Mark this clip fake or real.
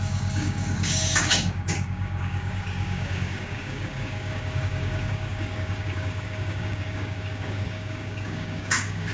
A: fake